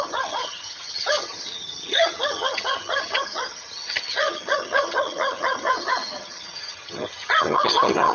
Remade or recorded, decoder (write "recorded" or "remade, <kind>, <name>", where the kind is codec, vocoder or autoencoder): remade, vocoder, HiFi-GAN